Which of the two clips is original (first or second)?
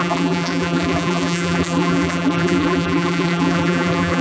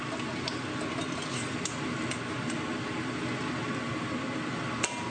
second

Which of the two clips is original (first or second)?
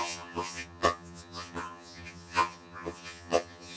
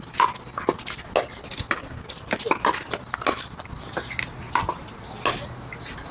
second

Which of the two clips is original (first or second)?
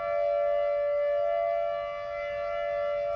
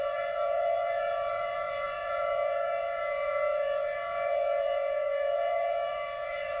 first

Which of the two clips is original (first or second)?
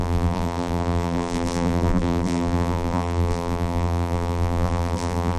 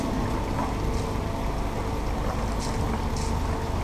second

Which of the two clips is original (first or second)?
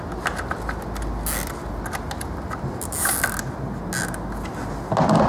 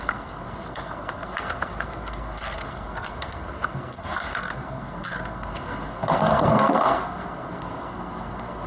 first